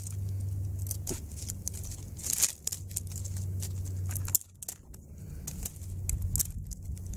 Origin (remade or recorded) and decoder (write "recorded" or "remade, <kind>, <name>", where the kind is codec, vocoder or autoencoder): recorded